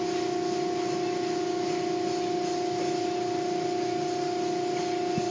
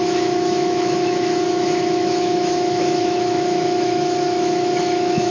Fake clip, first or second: second